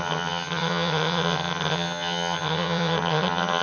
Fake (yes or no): yes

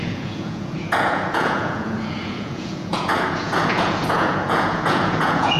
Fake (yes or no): yes